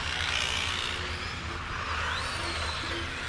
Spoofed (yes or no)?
no